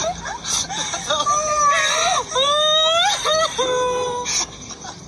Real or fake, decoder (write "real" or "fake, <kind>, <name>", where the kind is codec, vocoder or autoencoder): real